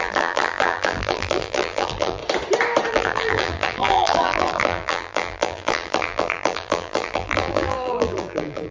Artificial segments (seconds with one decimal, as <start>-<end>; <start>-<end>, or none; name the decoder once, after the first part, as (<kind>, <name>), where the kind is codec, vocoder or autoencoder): 0.0-2.2 (vocoder, BigVGAN v2); 2.9-8.7